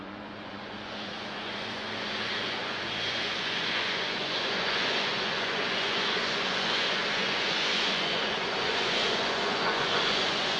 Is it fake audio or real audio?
fake